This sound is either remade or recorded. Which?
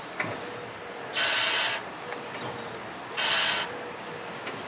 recorded